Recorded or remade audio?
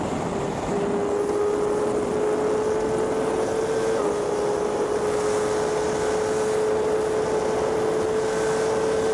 recorded